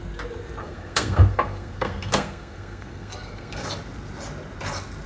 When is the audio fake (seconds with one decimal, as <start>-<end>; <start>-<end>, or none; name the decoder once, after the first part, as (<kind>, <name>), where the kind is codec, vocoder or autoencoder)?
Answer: 0.6-3.7 (codec, SNAC)